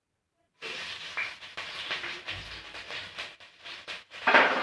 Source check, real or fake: fake